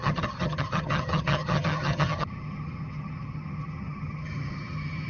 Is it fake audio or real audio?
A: fake